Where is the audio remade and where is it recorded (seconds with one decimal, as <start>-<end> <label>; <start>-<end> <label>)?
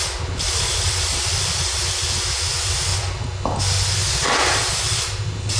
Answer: 0.0-5.6 recorded